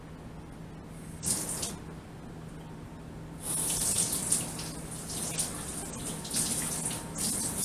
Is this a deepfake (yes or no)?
no